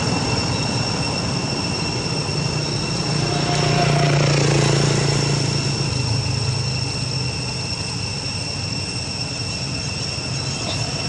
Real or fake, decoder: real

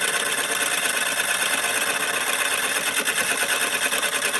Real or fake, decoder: real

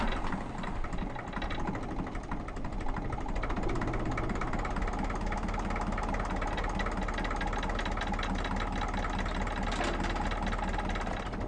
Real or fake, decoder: real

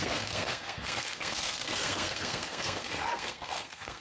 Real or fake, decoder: fake, codec, SNAC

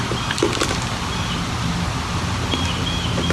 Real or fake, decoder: real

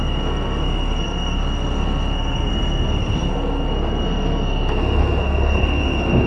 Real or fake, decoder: fake, codec, SNAC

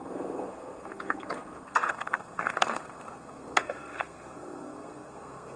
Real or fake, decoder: fake, codec, SNAC